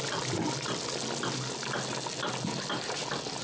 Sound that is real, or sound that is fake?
real